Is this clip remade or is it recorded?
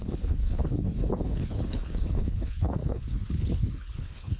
remade